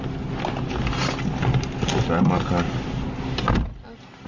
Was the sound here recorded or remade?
recorded